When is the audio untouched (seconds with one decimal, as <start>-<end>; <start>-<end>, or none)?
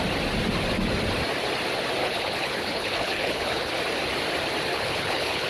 0.0-2.0; 3.7-4.7